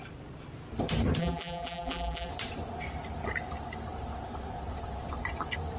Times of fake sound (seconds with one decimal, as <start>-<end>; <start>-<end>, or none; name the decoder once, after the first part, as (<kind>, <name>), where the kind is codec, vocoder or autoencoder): 1.2-2.3 (vocoder, BigVGAN v2)